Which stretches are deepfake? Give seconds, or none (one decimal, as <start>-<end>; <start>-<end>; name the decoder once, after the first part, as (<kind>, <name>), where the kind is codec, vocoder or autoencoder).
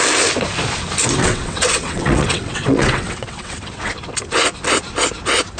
1.2-3.9 (vocoder, WaveNeXt)